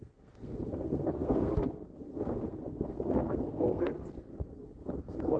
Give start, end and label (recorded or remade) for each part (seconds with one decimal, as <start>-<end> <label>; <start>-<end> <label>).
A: 0.0-5.4 remade